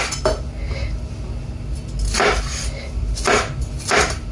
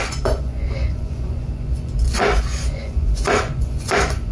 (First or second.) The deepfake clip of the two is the second